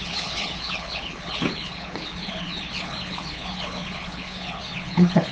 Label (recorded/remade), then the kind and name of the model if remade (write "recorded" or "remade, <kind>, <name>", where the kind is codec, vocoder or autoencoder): remade, codec, HILCodec